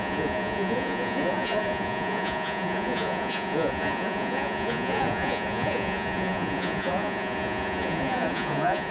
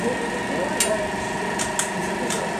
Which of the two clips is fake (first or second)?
first